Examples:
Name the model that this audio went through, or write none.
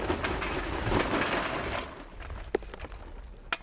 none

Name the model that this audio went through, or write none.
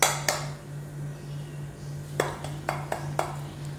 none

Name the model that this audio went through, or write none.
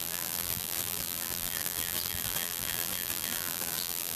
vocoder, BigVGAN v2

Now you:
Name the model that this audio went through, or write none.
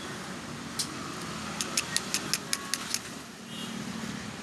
none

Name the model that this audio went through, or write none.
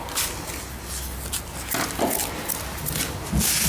none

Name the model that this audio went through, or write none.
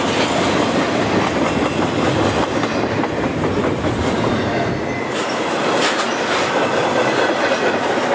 none